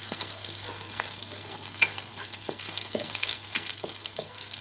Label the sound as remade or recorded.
remade